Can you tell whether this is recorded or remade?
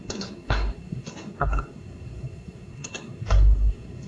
remade